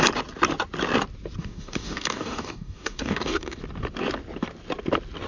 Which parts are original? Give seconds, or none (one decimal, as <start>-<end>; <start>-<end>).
0.0-1.4; 3.6-5.3